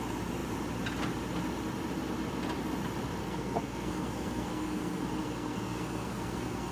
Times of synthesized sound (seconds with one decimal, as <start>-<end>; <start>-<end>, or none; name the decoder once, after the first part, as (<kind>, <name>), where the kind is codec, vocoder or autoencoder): 3.2-6.7 (codec, SNAC)